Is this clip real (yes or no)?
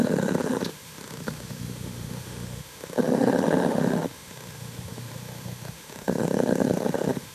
no